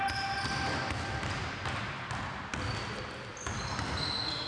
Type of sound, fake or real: real